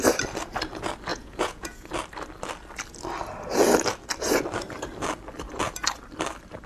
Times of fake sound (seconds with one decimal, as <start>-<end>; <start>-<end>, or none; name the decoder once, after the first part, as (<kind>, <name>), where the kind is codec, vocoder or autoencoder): 1.1-1.9 (vocoder, Vocos)